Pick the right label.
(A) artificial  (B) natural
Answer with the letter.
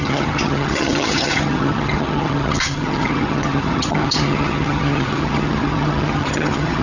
A